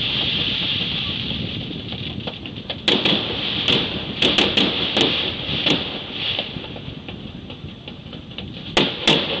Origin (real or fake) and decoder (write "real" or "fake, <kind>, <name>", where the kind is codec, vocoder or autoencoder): real